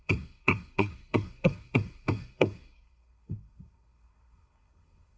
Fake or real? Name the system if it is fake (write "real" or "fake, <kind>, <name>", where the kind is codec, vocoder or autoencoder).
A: fake, codec, SNAC